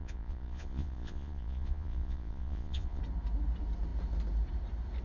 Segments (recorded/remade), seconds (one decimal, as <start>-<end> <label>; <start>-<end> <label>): 0.0-3.0 remade; 3.0-5.0 recorded